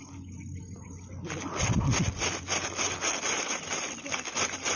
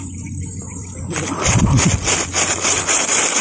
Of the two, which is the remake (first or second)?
second